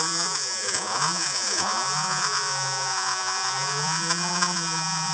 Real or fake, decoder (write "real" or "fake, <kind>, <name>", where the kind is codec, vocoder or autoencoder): fake, vocoder, Vocos